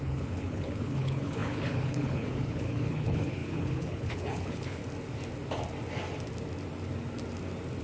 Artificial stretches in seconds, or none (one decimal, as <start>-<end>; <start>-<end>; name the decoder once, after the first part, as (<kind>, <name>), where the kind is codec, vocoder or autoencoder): 0.0-4.8 (codec, HILCodec)